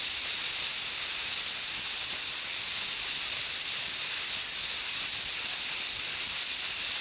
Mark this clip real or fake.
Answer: real